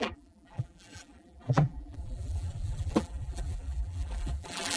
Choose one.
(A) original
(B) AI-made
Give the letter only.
B